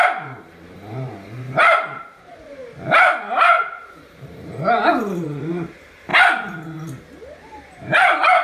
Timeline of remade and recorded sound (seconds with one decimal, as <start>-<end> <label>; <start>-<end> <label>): 0.0-2.6 remade; 2.6-3.4 recorded; 3.4-6.1 remade; 6.1-7.8 recorded; 7.8-8.4 remade